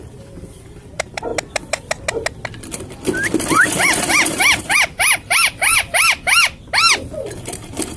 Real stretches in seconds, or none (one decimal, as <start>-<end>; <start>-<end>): 1.3-3.5; 5.7-7.4